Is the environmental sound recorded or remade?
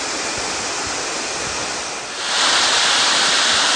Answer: recorded